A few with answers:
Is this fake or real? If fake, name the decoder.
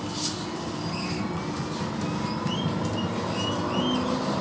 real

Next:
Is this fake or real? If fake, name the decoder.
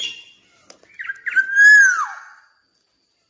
real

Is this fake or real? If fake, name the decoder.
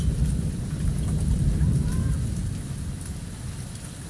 real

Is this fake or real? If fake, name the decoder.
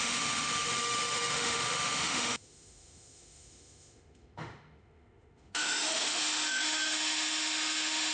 fake, autoencoder, DAC-VAE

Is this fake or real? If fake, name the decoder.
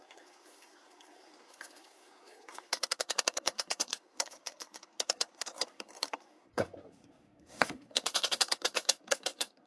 fake, codec, SNAC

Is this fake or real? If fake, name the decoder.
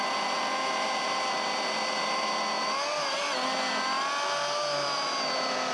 real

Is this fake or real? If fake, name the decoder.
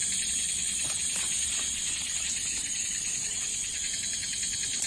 real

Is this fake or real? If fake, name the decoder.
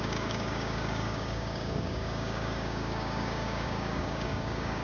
fake, codec, DAC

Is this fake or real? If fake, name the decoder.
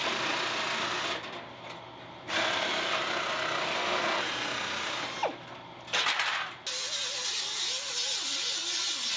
real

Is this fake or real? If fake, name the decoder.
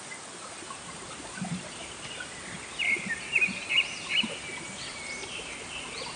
real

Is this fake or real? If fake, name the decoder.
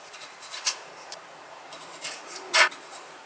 fake, vocoder, Vocos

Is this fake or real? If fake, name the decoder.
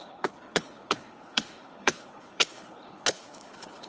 fake, codec, HILCodec